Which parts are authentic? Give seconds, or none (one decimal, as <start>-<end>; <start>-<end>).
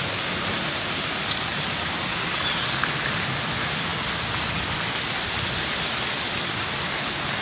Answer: 0.0-7.4